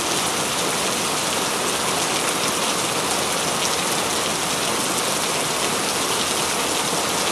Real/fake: real